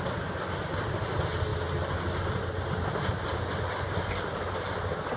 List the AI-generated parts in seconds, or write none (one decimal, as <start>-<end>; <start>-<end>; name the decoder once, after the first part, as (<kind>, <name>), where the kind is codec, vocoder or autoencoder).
none